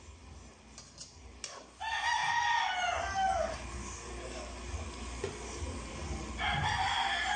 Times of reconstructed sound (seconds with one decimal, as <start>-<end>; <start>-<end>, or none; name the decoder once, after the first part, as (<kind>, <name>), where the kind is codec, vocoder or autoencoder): none